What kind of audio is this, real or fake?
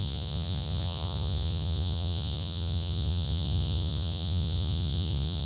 fake